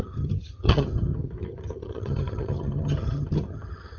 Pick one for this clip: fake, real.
fake